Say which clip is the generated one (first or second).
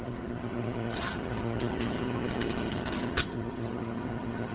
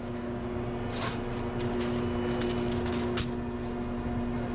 first